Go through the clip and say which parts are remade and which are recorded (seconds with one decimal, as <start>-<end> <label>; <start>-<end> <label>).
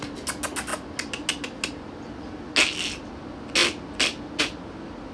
0.0-5.1 recorded